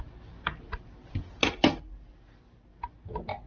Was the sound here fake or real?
real